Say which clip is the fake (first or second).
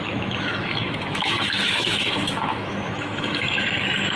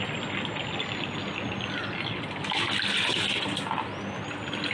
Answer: first